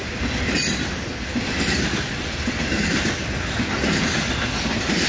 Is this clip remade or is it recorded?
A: recorded